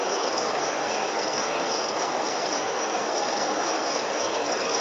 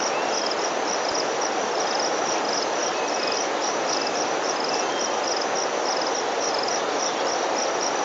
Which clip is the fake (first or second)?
first